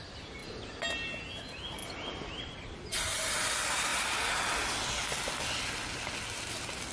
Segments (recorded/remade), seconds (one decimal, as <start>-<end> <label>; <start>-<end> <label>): 0.0-6.9 recorded